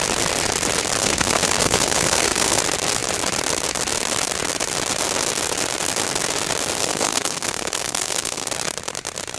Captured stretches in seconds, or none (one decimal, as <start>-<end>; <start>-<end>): 0.0-1.0; 2.6-6.8; 8.5-9.4